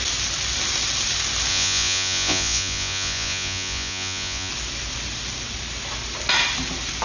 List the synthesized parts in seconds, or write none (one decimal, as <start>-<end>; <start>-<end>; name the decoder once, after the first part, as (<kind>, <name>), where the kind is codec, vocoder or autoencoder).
1.5-4.5 (vocoder, Vocos)